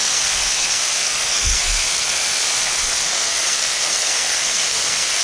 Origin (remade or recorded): remade